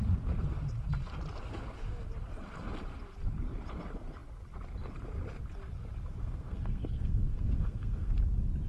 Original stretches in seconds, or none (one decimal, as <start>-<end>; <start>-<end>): 0.0-6.2; 8.1-8.7

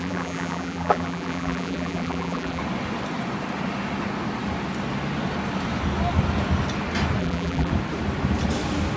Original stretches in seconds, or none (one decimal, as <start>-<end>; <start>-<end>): 2.6-7.2; 7.7-9.0

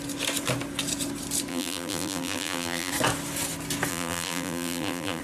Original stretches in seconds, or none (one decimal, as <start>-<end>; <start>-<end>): 0.0-1.5; 2.9-3.9

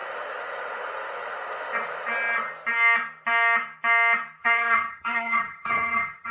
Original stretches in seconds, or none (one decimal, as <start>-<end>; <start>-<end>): 0.0-4.4